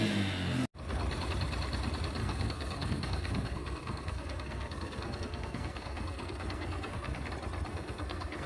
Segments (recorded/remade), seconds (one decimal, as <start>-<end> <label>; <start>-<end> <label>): 0.0-2.2 recorded; 2.2-7.3 remade; 7.3-7.7 recorded; 7.7-8.5 remade